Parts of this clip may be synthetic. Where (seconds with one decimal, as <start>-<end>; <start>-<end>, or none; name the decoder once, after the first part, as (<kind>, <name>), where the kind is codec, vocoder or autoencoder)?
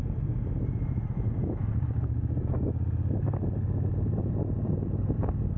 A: 0.6-1.6 (vocoder, BigVGAN v2); 5.0-5.6